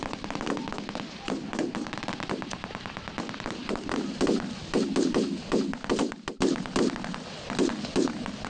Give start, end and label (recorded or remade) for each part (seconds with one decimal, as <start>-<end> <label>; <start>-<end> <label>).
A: 0.0-8.5 recorded